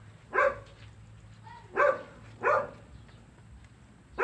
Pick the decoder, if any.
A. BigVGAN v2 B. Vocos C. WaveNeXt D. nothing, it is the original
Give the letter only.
D